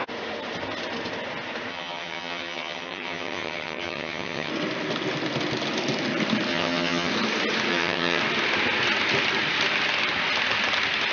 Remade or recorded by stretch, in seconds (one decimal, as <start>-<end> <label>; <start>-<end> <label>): 0.0-1.7 recorded; 1.7-4.5 remade; 4.5-6.5 recorded; 6.5-7.1 remade; 7.1-7.7 recorded; 7.7-8.2 remade; 8.2-11.1 recorded

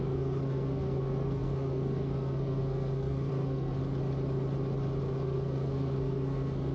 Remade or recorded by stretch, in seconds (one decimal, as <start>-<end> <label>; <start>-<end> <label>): 0.0-3.8 remade; 3.8-5.0 recorded; 5.0-6.7 remade